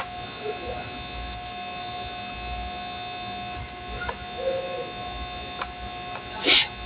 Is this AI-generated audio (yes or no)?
no